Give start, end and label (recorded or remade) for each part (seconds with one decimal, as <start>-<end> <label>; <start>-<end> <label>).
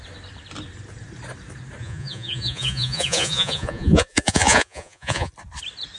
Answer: 0.0-1.8 recorded; 1.8-5.3 remade; 5.3-6.0 recorded